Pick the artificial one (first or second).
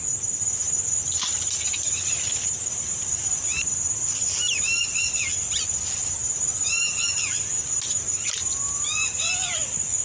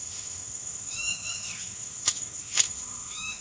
second